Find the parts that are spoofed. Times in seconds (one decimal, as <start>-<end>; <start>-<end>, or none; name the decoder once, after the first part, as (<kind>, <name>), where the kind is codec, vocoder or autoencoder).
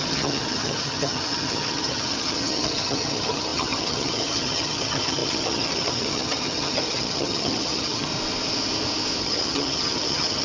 0.0-8.1 (vocoder, HiFi-GAN); 9.2-10.4